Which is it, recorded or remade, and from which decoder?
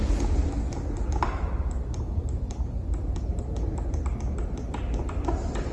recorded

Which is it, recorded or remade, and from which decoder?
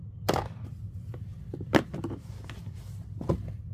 recorded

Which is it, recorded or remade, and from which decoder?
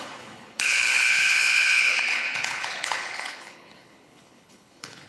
remade, codec, HILCodec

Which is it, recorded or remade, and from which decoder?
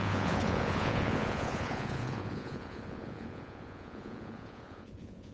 remade, vocoder, Vocos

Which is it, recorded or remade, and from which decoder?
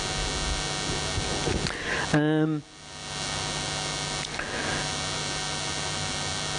recorded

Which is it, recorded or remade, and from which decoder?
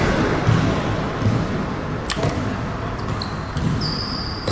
recorded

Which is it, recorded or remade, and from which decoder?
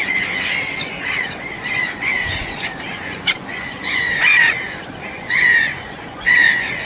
remade, vocoder, Vocos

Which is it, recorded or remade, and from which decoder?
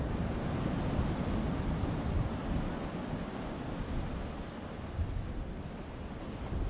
recorded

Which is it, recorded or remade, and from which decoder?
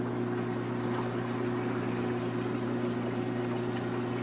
recorded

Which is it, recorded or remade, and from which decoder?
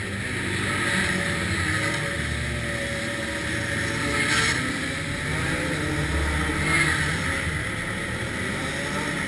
recorded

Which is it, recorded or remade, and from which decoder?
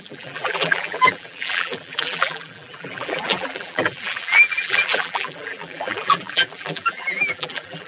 remade, vocoder, BigVGAN v2